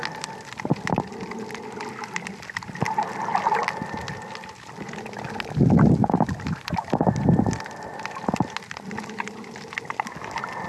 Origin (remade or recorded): recorded